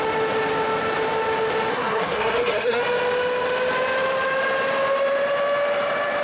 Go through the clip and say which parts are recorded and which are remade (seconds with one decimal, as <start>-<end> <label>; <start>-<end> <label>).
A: 0.0-1.7 recorded; 1.7-2.8 remade; 2.8-6.2 recorded